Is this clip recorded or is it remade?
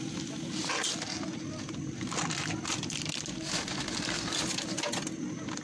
recorded